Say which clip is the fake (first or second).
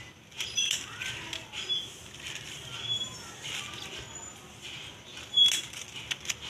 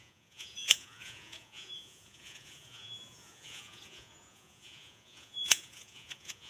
second